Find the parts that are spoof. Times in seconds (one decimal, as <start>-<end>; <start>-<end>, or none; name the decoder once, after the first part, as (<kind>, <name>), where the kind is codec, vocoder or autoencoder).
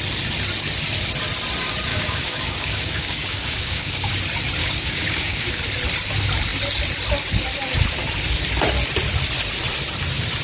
1.9-4.1 (codec, DAC); 4.6-5.6